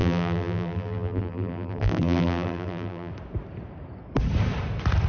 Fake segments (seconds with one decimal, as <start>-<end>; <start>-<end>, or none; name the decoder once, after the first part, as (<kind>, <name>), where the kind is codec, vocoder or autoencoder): 0.0-3.1 (vocoder, BigVGAN v2)